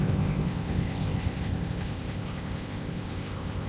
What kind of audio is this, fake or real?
fake